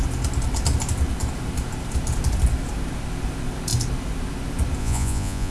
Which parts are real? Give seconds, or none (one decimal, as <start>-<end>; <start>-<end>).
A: 0.0-4.8